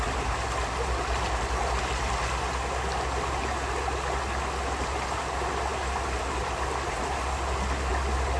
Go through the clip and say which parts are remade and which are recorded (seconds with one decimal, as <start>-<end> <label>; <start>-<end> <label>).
0.0-8.4 recorded